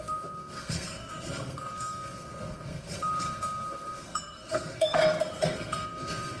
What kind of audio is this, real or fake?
fake